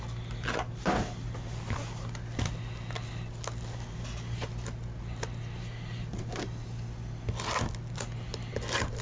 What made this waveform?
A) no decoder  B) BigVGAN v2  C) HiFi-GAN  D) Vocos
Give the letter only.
A